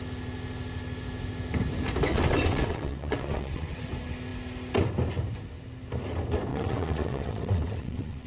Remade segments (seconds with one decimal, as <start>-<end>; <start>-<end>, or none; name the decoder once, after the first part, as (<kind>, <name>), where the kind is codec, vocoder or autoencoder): 2.1-3.9 (vocoder, WaveNeXt); 6.5-8.3